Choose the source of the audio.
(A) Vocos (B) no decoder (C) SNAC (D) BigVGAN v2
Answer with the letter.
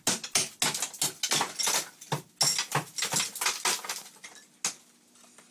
B